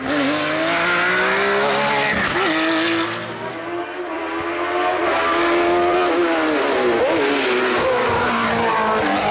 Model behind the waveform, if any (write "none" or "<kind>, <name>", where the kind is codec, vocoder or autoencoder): none